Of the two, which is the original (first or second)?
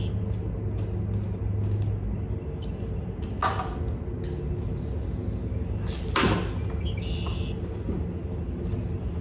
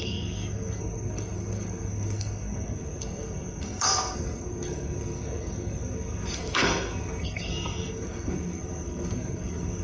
first